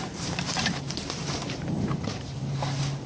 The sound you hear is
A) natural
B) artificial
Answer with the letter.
B